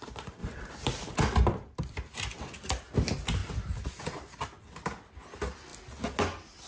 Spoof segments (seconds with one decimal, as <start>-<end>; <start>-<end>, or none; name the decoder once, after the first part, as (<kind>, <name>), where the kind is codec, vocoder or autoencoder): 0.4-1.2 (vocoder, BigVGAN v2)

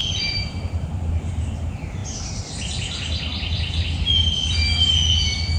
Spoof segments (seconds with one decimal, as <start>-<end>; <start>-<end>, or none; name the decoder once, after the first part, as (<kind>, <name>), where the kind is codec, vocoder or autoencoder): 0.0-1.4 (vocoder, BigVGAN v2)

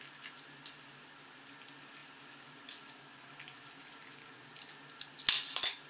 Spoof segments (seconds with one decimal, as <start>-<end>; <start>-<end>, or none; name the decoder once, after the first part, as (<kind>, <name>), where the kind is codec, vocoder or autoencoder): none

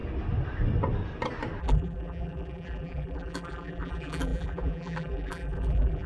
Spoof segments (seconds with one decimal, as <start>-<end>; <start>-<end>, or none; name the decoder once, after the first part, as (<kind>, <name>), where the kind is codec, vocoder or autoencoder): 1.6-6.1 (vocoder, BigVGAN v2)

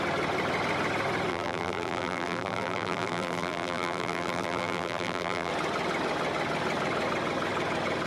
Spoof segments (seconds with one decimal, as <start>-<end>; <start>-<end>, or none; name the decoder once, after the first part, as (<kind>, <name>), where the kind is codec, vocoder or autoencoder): 1.3-5.5 (vocoder, BigVGAN v2)